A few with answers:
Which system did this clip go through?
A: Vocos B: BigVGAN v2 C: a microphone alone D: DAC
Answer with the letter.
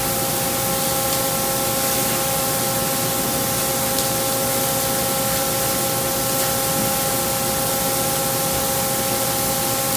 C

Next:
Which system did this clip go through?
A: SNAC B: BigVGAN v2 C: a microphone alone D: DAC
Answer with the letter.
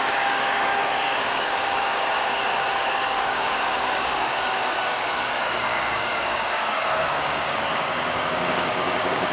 D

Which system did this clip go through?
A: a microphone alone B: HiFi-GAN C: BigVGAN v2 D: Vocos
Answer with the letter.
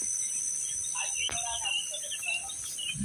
C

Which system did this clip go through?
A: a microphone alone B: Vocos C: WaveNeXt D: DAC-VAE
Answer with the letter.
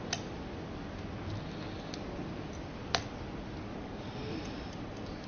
A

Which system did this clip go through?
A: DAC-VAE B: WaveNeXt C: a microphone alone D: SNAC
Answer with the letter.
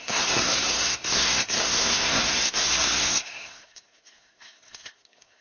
D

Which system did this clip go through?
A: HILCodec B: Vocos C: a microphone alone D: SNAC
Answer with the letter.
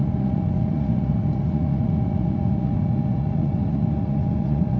B